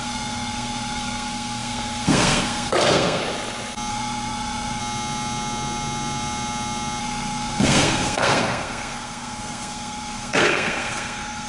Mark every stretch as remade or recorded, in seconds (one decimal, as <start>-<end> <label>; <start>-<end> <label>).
0.0-3.2 remade; 3.2-3.9 recorded; 3.9-4.8 remade; 4.8-7.0 recorded; 7.0-11.5 remade